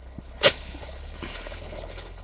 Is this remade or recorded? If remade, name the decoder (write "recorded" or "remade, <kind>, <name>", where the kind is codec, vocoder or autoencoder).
remade, codec, HILCodec